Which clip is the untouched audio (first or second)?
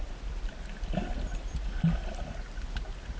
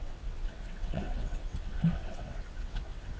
first